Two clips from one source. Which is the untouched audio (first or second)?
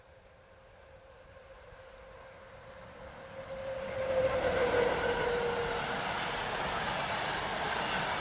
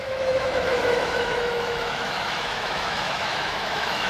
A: first